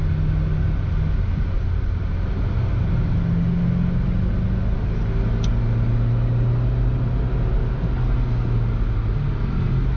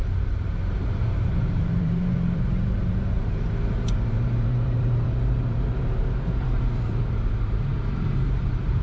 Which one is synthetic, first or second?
second